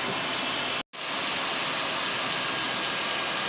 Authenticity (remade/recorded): recorded